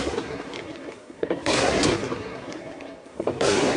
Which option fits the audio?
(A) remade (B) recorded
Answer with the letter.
A